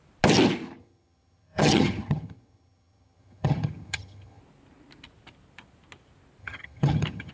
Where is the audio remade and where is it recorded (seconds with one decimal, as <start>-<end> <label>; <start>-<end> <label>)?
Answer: 0.0-0.8 recorded; 0.8-4.4 remade; 4.4-6.4 recorded; 6.4-7.3 remade